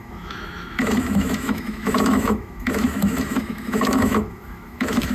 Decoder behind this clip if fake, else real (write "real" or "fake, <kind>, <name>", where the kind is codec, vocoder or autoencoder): fake, autoencoder, DAC-VAE